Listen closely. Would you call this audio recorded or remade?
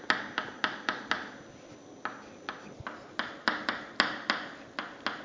recorded